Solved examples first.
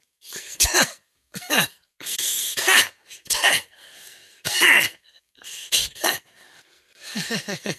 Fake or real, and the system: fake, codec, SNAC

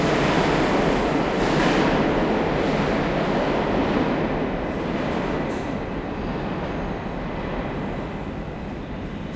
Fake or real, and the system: real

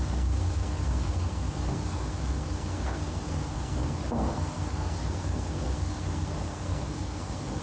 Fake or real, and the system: fake, codec, SNAC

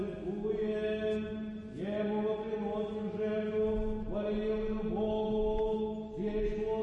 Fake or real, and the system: real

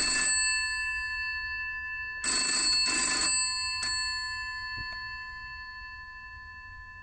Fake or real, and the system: real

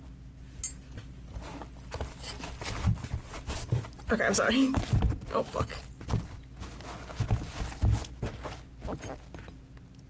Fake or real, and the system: real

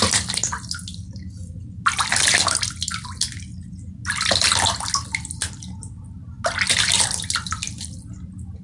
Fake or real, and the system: real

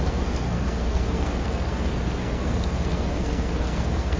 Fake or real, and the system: fake, codec, SNAC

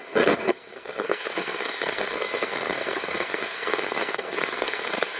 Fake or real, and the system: fake, codec, SNAC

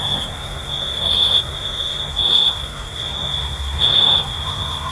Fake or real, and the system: fake, codec, SNAC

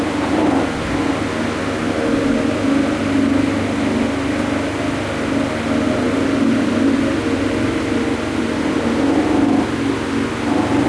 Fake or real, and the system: real